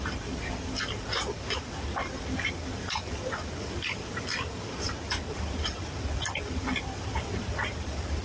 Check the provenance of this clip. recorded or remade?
remade